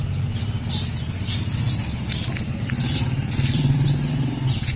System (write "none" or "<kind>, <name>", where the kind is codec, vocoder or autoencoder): vocoder, BigVGAN v2